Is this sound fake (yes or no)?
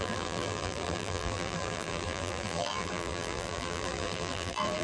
yes